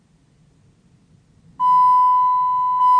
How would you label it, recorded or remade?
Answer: recorded